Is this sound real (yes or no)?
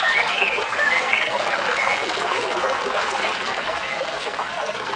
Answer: no